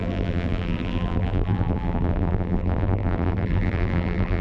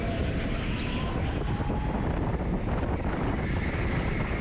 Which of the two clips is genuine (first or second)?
second